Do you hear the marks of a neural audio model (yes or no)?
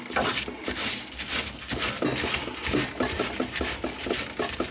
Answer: no